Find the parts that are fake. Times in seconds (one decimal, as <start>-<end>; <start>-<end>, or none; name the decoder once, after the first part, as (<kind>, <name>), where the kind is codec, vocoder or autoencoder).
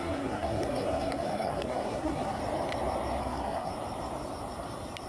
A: 0.0-2.4 (codec, SNAC); 3.2-3.7